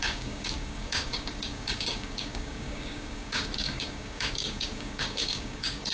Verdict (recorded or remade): remade